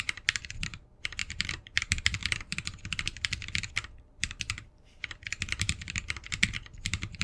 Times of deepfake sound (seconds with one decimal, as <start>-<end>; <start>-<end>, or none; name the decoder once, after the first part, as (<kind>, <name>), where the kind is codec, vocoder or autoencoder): 0.0-2.2 (vocoder, BigVGAN v2); 3.6-7.2